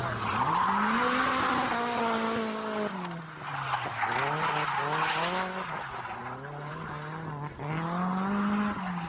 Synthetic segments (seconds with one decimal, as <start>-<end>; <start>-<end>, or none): none